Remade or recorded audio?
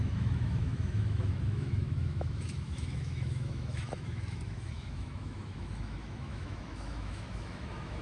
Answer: remade